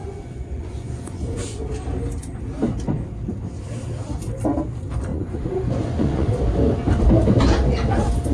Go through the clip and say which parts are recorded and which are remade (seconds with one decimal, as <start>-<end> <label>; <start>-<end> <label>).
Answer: 0.0-1.6 remade; 1.6-5.1 recorded; 5.1-6.3 remade; 6.3-8.3 recorded